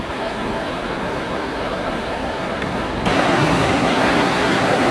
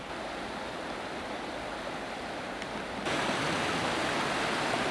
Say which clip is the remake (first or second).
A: first